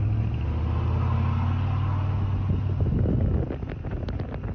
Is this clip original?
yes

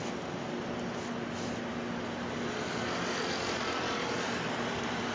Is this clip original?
yes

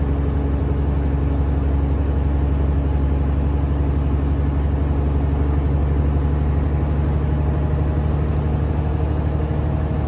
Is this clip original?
yes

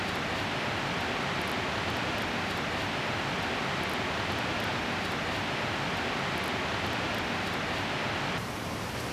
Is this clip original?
yes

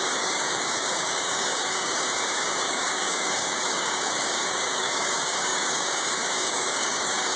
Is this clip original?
no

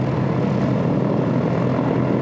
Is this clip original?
yes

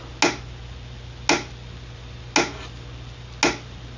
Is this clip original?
yes